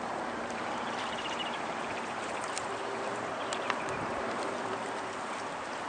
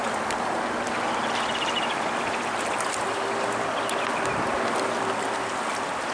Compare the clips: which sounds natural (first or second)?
second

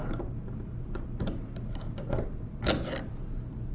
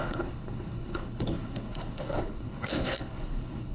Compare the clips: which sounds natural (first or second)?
first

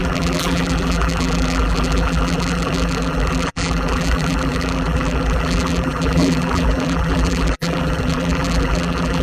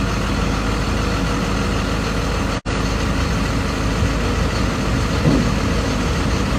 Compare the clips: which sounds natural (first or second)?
second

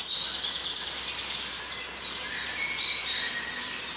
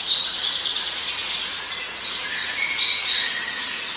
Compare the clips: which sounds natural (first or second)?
first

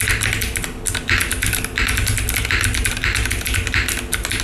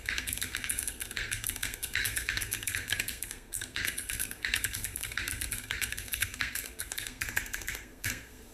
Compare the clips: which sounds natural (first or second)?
first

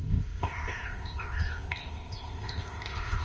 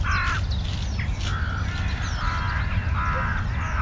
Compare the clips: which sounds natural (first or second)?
second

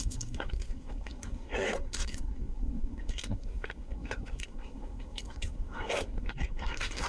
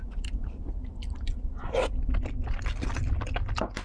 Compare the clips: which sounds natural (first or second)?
second